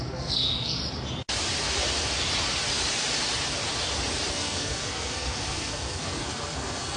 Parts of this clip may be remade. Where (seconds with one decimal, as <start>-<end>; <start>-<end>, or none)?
0.0-0.8; 4.3-7.0